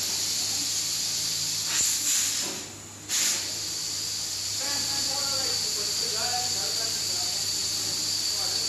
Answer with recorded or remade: recorded